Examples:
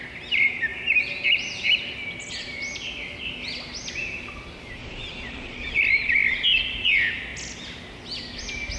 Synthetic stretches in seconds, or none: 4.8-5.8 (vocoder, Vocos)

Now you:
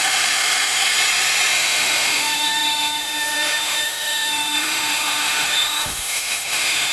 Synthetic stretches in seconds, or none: 0.0-0.9 (autoencoder, DAC-VAE); 1.5-6.9

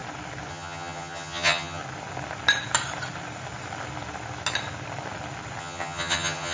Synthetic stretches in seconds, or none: 0.5-1.8 (vocoder, HiFi-GAN); 5.6-6.5

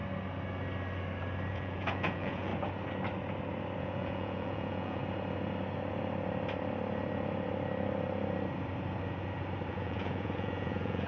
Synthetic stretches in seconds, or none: 1.5-2.5 (vocoder, Vocos); 3.8-5.0; 9.7-11.1

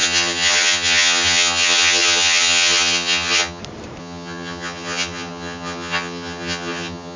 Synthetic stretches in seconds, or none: 0.0-3.6 (vocoder, HiFi-GAN); 4.0-7.2

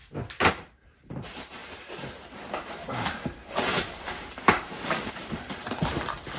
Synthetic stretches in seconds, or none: 0.5-6.4 (vocoder, BigVGAN v2)